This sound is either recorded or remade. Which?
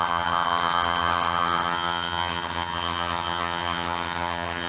remade